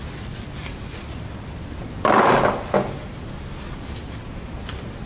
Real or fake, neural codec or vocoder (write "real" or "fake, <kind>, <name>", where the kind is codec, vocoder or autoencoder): real